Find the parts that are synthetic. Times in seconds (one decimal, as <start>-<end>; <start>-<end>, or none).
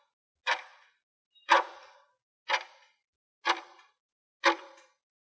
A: none